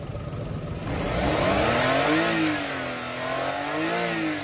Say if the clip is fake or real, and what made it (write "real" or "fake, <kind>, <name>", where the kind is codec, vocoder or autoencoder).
real